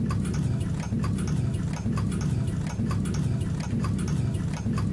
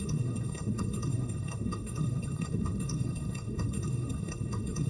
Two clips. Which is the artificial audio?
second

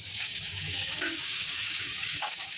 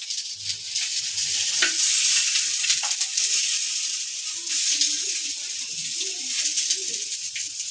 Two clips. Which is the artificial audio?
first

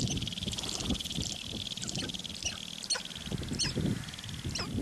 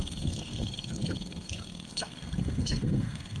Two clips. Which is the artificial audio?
second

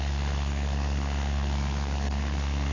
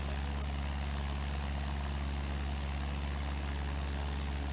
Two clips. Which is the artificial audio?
first